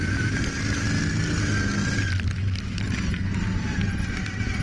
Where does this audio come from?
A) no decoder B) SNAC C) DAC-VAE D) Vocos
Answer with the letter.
A